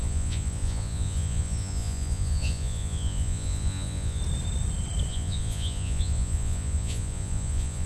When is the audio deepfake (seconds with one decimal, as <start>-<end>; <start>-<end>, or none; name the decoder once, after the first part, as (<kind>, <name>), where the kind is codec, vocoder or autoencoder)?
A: 0.0-4.2 (vocoder, Vocos); 5.1-7.9